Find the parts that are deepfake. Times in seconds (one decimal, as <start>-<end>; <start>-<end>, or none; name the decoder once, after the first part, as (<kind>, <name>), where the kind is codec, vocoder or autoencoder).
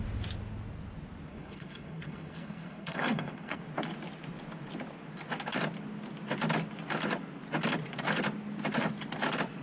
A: 1.3-3.6 (codec, SNAC)